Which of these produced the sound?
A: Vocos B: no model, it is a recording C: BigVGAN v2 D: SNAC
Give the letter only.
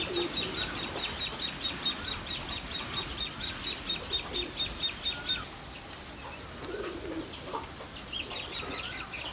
B